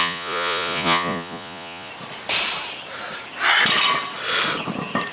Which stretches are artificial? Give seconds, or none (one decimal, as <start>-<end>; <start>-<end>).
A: 0.0-1.9